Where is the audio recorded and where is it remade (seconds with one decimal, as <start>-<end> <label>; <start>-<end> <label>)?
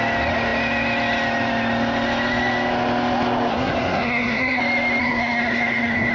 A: 0.0-3.5 recorded; 3.5-4.6 remade; 4.6-5.0 recorded; 5.0-6.1 remade